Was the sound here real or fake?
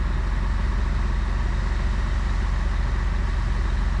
real